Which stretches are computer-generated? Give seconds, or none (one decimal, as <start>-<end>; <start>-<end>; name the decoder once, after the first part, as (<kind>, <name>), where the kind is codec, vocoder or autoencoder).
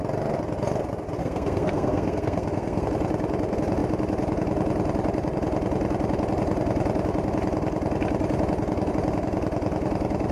1.2-2.9 (codec, SNAC)